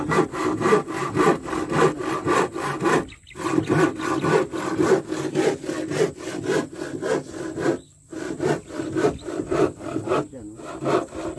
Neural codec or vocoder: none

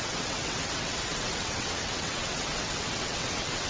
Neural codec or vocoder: vocoder, WaveNeXt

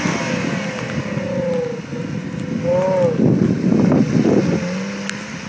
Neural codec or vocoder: none